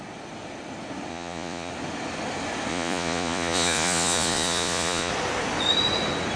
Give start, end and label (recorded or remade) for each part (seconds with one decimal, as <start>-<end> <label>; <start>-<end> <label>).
0.0-1.1 recorded; 1.1-1.7 remade; 1.7-2.7 recorded; 2.7-5.1 remade; 5.1-6.4 recorded